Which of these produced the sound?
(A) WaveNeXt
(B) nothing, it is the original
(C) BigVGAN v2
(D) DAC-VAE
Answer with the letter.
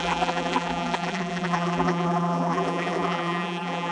C